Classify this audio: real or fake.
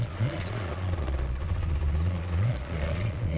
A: fake